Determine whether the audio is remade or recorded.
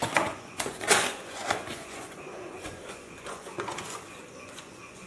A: remade